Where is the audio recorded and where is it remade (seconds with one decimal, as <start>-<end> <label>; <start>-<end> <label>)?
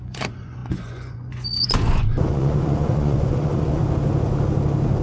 0.0-3.8 remade; 3.8-5.0 recorded